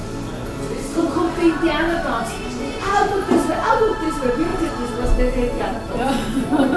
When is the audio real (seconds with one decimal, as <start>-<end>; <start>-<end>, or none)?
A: 0.0-4.1; 4.5-5.6